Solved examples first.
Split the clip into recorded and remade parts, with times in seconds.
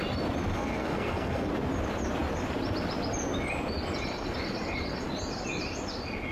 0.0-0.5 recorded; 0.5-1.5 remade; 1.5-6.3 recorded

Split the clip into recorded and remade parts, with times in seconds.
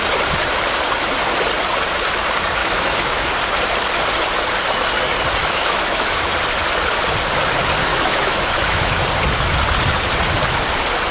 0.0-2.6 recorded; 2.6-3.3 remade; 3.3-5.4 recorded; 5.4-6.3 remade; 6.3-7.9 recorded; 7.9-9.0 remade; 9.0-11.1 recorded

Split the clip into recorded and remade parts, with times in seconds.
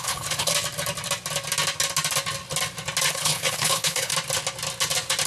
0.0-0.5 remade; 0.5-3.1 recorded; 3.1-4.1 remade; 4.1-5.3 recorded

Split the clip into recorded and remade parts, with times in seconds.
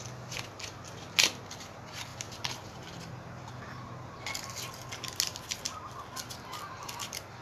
0.0-7.4 recorded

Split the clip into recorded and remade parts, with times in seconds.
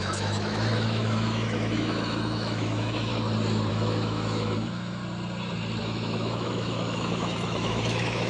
0.0-3.1 remade; 3.1-3.7 recorded; 3.7-5.0 remade; 5.0-5.8 recorded; 5.8-8.3 remade